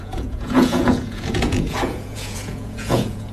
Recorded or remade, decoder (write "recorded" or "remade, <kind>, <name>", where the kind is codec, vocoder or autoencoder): remade, vocoder, Vocos